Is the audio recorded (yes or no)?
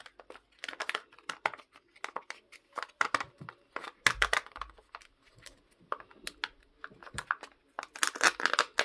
yes